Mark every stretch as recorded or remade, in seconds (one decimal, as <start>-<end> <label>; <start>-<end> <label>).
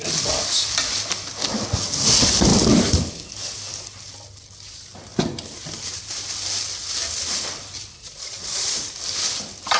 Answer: 0.0-7.9 recorded; 7.9-8.8 remade; 8.8-9.8 recorded